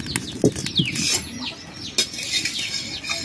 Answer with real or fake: real